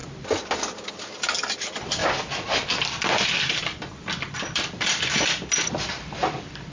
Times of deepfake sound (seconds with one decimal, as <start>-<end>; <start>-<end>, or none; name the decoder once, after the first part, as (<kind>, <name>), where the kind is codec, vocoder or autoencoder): 0.9-2.0 (vocoder, BigVGAN v2); 3.9-6.7

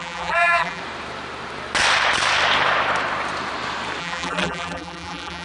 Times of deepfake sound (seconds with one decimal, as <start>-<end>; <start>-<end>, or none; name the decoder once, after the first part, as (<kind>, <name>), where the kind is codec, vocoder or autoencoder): 0.0-0.8 (vocoder, BigVGAN v2); 4.0-5.4

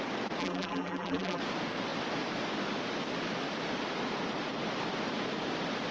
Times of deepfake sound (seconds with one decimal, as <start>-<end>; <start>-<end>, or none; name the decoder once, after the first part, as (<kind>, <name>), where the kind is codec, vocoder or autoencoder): 0.4-1.4 (vocoder, BigVGAN v2)

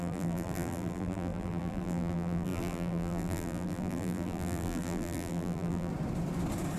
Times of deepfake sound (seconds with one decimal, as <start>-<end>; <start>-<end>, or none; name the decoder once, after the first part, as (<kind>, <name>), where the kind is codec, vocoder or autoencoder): 0.0-5.9 (vocoder, BigVGAN v2)

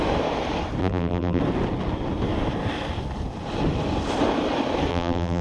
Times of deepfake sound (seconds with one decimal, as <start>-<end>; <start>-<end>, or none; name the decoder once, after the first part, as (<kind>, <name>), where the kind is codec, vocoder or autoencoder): 0.8-1.4 (vocoder, BigVGAN v2); 4.9-5.4